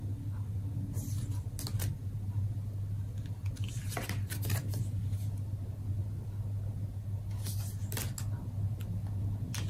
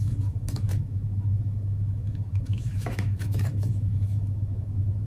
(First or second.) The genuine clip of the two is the first